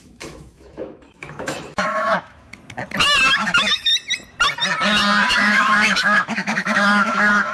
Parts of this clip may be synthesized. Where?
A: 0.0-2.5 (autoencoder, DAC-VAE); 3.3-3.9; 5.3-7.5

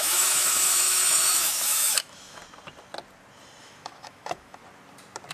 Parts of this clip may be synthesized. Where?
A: 0.0-2.4 (autoencoder, DAC-VAE); 3.6-4.6

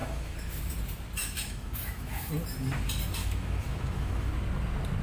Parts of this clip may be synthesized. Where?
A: 0.0-0.6 (autoencoder, DAC-VAE); 1.2-2.3; 3.2-4.3

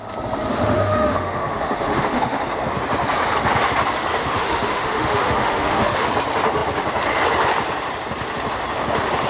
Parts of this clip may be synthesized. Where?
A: 0.5-2.4 (autoencoder, DAC-VAE); 4.2-6.1

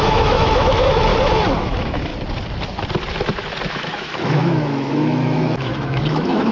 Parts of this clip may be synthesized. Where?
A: 0.0-1.1 (autoencoder, DAC-VAE); 1.6-2.1; 3.7-6.5

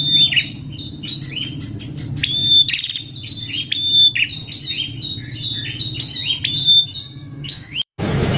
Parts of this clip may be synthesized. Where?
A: 7.2-8.4 (autoencoder, DAC-VAE)

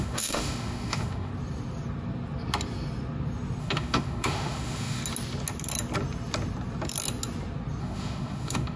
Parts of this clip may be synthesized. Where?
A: 0.0-1.3 (autoencoder, DAC-VAE); 3.6-5.0; 7.8-8.8

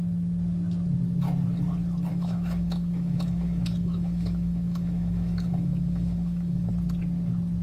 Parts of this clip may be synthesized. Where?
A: 2.1-6.7 (autoencoder, DAC-VAE)